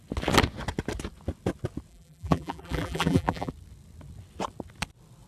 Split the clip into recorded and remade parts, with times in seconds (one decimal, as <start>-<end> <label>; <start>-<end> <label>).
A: 0.0-1.9 recorded; 1.9-3.5 remade; 3.5-5.3 recorded